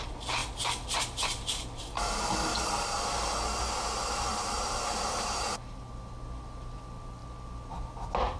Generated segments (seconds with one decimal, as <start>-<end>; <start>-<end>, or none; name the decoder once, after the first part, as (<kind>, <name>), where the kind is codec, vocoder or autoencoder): 4.3-5.8 (vocoder, BigVGAN v2)